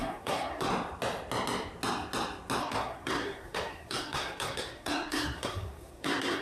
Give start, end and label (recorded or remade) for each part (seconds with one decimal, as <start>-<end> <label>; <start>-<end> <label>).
0.0-0.7 remade; 0.7-2.6 recorded; 2.6-6.4 remade